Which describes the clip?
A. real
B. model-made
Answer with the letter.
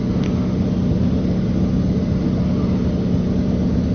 A